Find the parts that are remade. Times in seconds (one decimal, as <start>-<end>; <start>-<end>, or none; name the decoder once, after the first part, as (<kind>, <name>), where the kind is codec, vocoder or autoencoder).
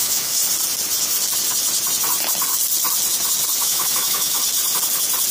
0.0-0.4 (autoencoder, DAC-VAE); 3.6-4.4